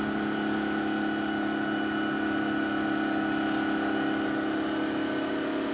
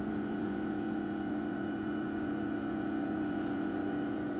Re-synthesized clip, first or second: second